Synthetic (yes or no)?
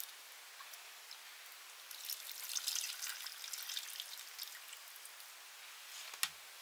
no